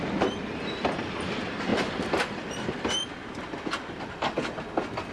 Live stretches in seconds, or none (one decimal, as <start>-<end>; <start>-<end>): 0.0-1.7; 4.1-5.1